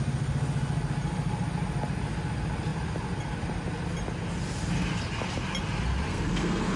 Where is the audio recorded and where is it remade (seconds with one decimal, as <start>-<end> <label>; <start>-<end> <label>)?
0.0-6.1 recorded; 6.1-6.8 remade